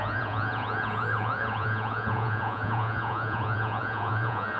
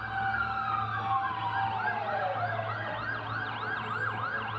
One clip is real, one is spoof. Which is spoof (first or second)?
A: first